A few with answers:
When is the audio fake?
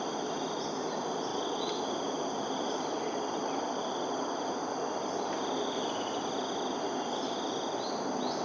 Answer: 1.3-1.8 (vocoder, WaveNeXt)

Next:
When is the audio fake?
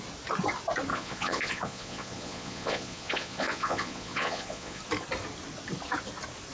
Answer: 0.9-4.8 (vocoder, Vocos)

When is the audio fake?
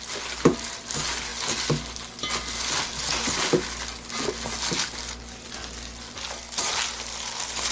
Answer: none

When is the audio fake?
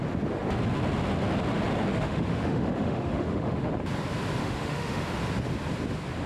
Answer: 1.9-3.7 (autoencoder, DAC-VAE); 4.4-5.2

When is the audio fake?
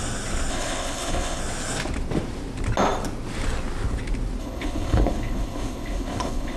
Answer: 0.5-1.4 (codec, HILCodec); 4.4-6.6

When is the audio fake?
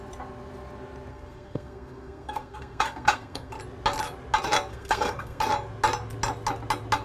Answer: 1.1-3.5 (codec, SNAC); 4.7-5.4